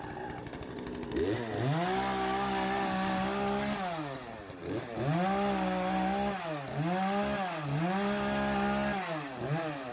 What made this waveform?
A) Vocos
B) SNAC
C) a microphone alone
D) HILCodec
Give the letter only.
C